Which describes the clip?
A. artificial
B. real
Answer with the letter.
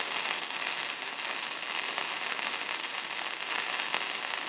B